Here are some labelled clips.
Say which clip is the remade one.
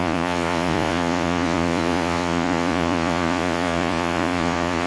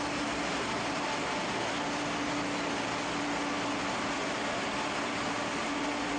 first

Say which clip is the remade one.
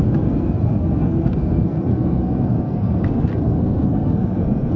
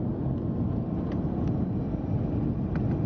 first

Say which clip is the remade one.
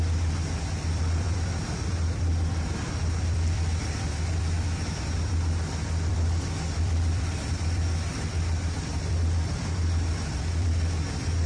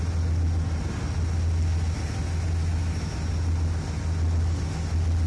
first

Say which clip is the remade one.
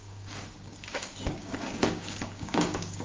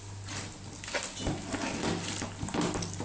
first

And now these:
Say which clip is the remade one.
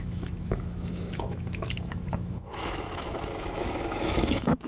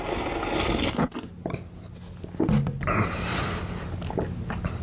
first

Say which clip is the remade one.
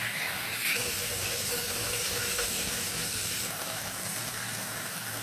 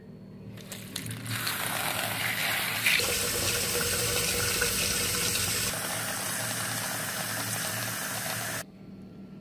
first